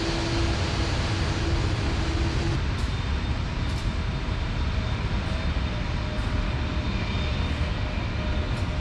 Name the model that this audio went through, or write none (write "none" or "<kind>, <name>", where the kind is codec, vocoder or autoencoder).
none